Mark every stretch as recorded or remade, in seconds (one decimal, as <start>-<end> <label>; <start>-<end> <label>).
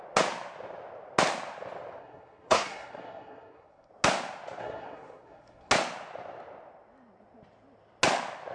0.0-2.0 recorded; 2.0-3.9 remade; 3.9-4.6 recorded; 4.6-5.7 remade; 5.7-8.5 recorded